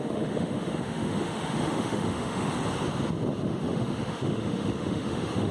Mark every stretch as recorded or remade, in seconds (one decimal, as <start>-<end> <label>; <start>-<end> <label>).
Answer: 0.0-2.5 remade; 2.5-3.4 recorded; 3.4-5.5 remade